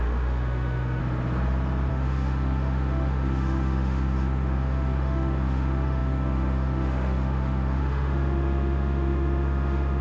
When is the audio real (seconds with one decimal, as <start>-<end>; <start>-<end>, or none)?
1.0-1.9